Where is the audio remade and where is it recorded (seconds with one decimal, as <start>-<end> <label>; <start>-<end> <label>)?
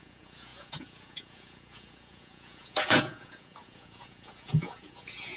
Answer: 0.0-5.4 remade